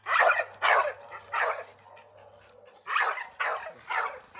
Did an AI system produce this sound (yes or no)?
no